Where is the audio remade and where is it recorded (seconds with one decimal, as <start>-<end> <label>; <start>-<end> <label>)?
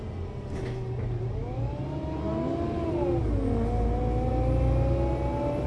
0.0-5.7 recorded